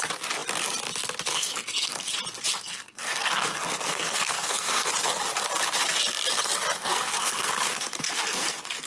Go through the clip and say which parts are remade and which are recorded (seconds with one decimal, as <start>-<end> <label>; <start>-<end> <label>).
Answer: 0.0-1.3 recorded; 1.3-2.1 remade; 2.1-2.6 recorded; 2.6-4.9 remade; 4.9-6.8 recorded; 6.8-8.9 remade